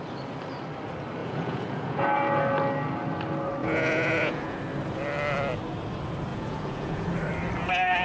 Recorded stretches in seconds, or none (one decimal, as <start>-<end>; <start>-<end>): 0.0-1.2; 2.4-3.6; 4.6-6.3; 7.1-8.0